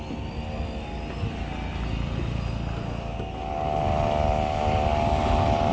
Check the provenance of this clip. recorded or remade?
recorded